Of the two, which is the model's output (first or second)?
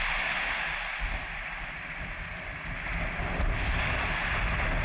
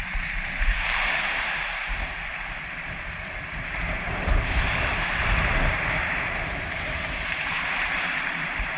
second